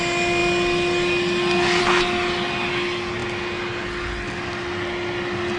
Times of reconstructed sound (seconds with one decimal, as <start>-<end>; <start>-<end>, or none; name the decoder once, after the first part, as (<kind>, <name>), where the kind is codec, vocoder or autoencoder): none